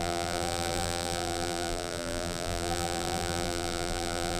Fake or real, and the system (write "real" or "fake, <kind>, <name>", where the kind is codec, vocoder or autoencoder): fake, vocoder, BigVGAN v2